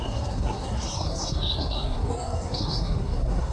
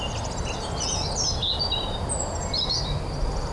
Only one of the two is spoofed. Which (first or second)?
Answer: first